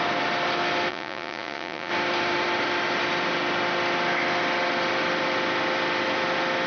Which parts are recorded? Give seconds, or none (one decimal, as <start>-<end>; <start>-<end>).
0.0-0.9; 1.9-6.7